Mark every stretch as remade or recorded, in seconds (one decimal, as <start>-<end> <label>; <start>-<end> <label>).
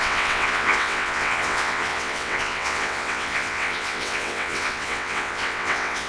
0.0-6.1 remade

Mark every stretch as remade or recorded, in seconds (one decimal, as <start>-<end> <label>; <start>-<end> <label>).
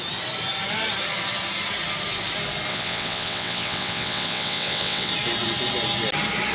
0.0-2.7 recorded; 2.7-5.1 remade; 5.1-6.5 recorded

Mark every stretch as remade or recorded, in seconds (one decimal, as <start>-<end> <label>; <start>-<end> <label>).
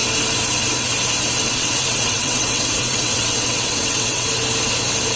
0.0-1.5 recorded; 1.5-4.3 remade; 4.3-5.2 recorded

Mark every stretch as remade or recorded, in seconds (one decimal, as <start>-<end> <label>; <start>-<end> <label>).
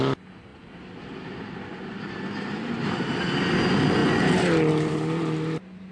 0.0-5.9 recorded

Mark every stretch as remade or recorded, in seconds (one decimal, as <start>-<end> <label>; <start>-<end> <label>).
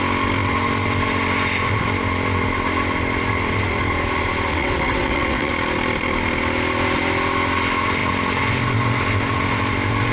0.0-4.5 recorded; 4.5-5.5 remade; 5.5-10.1 recorded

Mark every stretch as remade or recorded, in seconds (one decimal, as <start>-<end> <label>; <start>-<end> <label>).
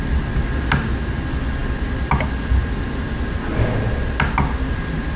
0.0-5.2 recorded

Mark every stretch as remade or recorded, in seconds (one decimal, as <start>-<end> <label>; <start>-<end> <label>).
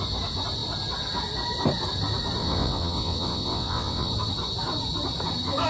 0.0-2.4 recorded; 2.4-4.1 remade; 4.1-5.7 recorded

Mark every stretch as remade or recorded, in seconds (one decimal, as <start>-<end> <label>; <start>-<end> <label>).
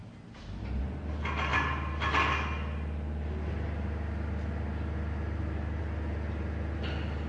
0.0-7.3 recorded